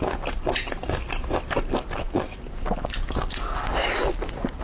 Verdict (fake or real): real